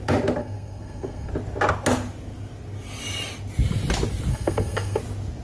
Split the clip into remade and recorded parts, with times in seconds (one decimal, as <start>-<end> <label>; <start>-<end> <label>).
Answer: 0.0-0.4 recorded; 0.4-1.3 remade; 1.3-4.3 recorded; 4.3-5.0 remade; 5.0-5.4 recorded